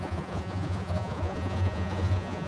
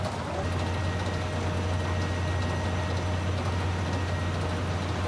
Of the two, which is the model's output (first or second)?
first